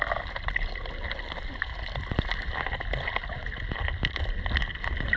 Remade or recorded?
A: recorded